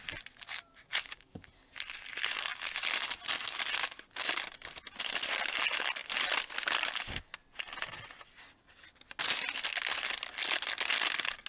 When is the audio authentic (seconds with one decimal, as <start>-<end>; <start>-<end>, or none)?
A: 0.0-0.9; 1.5-11.5